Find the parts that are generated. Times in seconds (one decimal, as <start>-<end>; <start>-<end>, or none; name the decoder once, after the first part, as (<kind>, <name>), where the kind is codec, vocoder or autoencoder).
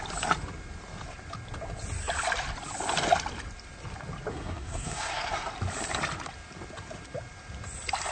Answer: 4.3-5.5 (codec, SNAC)